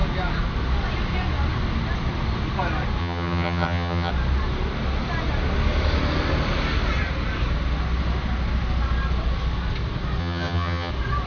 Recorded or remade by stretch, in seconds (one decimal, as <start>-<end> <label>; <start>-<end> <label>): 0.0-3.0 recorded; 3.0-4.1 remade; 4.1-10.2 recorded; 10.2-10.9 remade; 10.9-11.3 recorded